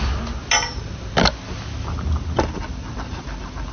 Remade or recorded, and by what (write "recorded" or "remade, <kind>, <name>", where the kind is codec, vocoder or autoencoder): recorded